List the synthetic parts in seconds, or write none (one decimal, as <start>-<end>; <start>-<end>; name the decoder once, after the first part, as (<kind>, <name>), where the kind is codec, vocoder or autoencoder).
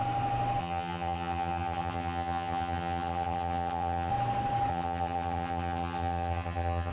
0.6-4.1 (vocoder, HiFi-GAN); 4.7-6.9